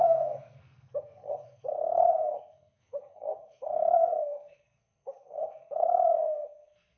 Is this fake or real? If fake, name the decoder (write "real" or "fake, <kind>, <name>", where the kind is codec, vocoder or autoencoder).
fake, codec, SNAC